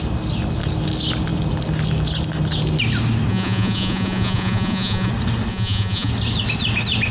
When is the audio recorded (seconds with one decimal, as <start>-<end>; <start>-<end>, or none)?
0.0-3.3; 5.1-5.5; 6.1-7.1